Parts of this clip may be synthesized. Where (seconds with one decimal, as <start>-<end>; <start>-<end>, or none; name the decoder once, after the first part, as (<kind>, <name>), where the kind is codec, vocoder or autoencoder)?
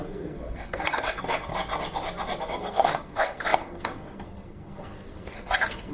0.0-1.5 (codec, SNAC); 2.4-5.9